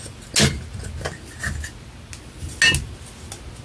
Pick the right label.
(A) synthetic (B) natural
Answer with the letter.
B